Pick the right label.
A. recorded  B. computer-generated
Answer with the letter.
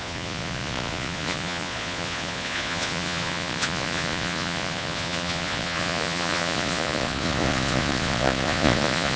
B